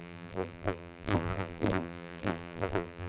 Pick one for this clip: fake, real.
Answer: fake